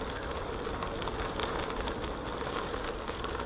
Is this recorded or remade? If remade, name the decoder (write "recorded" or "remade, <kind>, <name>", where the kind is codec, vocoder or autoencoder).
recorded